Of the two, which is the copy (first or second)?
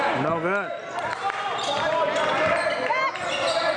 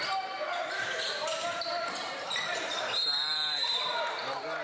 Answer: second